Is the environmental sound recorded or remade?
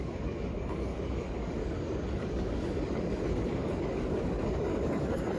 remade